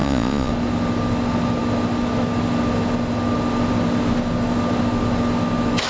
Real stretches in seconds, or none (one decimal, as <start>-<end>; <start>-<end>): 0.5-5.9